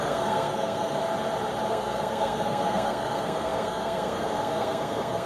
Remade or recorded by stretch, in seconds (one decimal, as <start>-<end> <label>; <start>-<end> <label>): 0.0-1.0 remade; 1.0-1.7 recorded; 1.7-5.3 remade